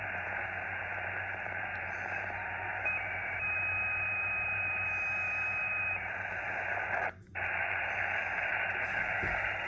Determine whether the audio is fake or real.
fake